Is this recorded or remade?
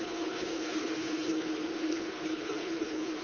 remade